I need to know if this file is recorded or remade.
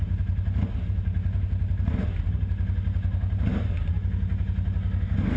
recorded